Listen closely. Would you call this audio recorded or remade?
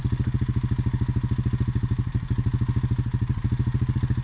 recorded